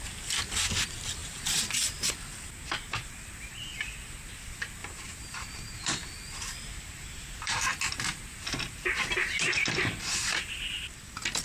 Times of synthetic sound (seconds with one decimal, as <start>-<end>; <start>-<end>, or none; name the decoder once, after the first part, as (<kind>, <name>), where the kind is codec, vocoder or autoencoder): 1.2-2.1 (vocoder, BigVGAN v2); 4.8-7.6